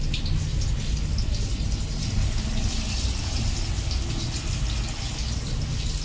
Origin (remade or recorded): recorded